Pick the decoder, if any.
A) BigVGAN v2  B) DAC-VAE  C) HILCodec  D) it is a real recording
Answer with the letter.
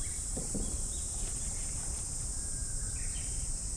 A